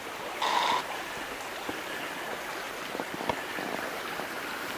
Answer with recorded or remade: recorded